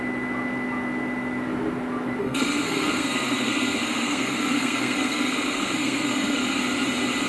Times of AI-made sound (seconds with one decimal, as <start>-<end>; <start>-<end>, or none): 2.2-6.6